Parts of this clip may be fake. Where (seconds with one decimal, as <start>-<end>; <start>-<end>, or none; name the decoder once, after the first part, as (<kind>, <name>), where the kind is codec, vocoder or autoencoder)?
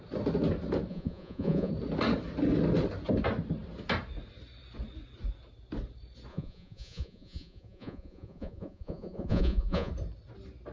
0.9-1.7 (vocoder, Vocos); 6.3-9.9